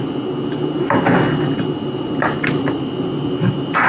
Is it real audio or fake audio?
real